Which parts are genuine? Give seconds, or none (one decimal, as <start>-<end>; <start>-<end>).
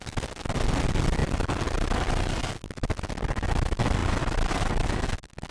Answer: 0.0-1.2; 2.4-4.0; 5.0-5.5